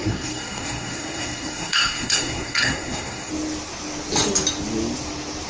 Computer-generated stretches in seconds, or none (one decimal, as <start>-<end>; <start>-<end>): 0.0-3.3